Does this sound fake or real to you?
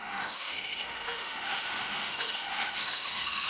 fake